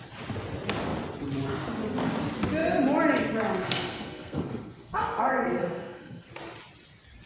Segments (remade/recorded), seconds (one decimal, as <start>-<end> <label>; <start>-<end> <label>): 0.0-3.6 recorded; 3.6-6.3 remade; 6.3-7.3 recorded